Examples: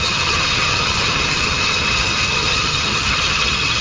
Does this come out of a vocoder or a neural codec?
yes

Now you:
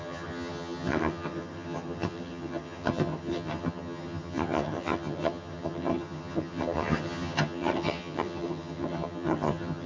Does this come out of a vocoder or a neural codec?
yes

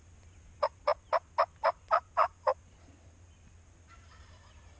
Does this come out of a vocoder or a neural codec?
no